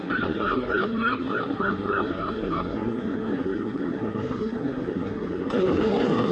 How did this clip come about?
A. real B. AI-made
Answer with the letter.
B